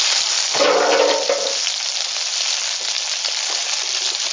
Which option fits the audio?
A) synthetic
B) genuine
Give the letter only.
B